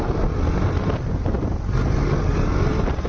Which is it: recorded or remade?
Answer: recorded